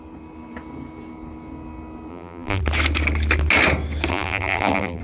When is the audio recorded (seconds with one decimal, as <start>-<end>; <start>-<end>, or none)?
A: 0.0-2.1; 2.6-4.1